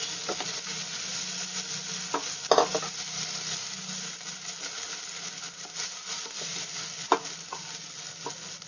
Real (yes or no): yes